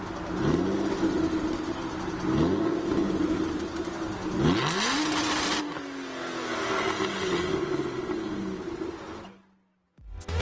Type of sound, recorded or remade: recorded